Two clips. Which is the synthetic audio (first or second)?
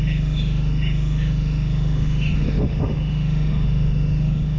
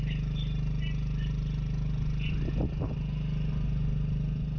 first